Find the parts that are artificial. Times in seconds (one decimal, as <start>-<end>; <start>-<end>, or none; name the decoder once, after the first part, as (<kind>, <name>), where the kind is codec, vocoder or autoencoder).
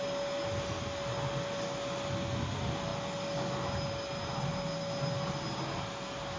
none